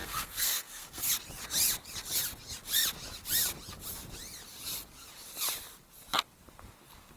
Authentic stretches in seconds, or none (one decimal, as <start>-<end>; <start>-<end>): 1.1-7.2